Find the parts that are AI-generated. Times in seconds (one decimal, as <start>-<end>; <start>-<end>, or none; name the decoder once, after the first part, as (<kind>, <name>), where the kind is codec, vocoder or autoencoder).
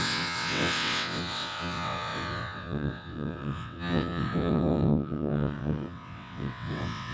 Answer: 0.0-7.1 (vocoder, WaveNeXt)